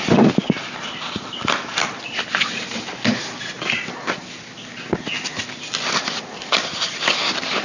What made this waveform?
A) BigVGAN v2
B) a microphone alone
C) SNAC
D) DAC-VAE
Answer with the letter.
A